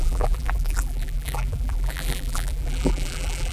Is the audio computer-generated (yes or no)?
yes